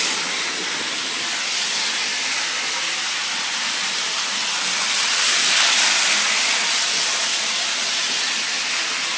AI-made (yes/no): no